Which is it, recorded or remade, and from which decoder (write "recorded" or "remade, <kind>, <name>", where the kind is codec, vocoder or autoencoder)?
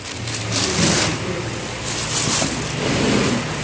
recorded